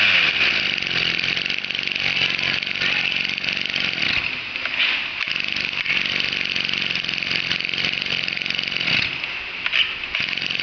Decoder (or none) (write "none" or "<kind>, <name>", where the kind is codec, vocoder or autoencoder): none